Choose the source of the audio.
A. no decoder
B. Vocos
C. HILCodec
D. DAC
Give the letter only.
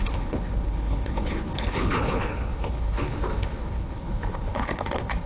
C